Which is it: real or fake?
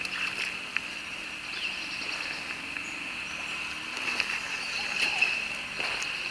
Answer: real